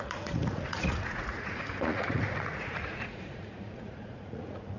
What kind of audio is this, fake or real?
fake